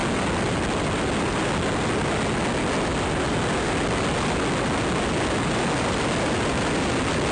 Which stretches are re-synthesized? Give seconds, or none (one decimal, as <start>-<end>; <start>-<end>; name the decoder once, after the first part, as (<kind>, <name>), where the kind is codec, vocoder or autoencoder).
none